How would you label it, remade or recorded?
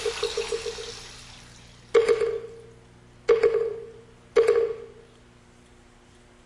recorded